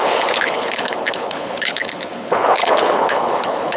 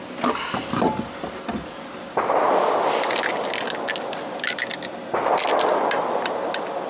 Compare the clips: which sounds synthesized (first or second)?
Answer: first